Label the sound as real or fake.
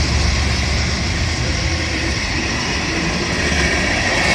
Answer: real